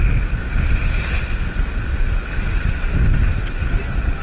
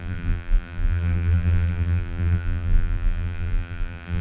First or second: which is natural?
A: first